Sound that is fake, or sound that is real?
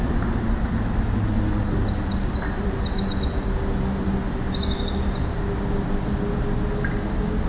real